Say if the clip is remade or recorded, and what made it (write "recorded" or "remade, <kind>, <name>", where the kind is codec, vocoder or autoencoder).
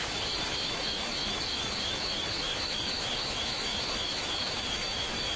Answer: remade, autoencoder, DAC-VAE